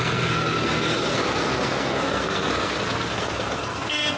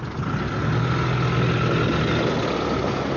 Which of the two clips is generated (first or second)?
first